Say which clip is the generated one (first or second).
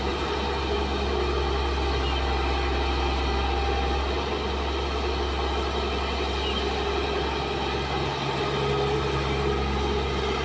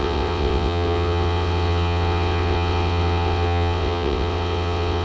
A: second